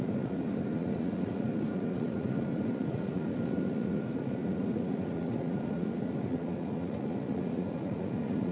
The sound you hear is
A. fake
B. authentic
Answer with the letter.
A